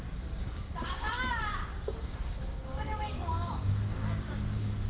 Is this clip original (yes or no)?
no